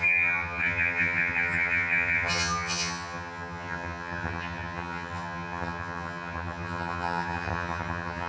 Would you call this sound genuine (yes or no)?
no